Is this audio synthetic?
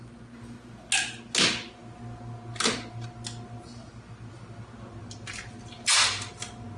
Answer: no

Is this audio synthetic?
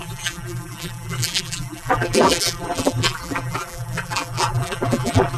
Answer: yes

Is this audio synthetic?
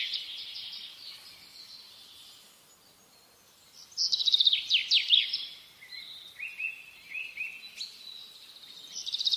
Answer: no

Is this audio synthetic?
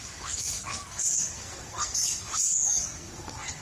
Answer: yes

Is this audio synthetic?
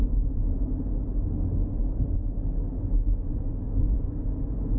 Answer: no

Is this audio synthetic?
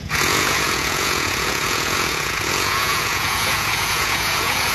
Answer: yes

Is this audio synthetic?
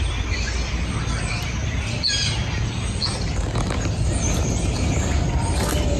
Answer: no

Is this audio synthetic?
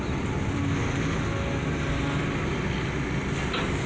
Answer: no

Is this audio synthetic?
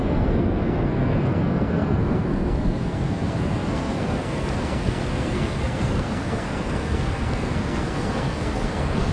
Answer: yes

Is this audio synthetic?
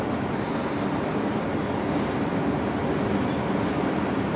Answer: no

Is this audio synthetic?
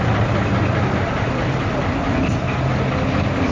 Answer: no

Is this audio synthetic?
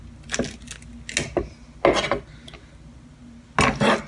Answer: no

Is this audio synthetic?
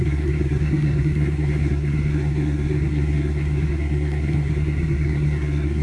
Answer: yes